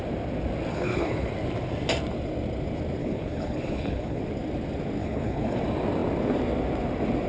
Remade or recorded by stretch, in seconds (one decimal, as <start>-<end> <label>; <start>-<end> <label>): 0.0-0.7 recorded; 0.7-1.3 remade; 1.3-3.0 recorded; 3.0-4.2 remade; 4.2-5.0 recorded; 5.0-5.6 remade; 5.6-7.3 recorded